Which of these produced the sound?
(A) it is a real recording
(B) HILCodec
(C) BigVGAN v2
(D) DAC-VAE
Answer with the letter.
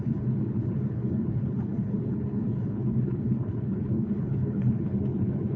B